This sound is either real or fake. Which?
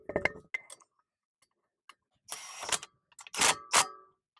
real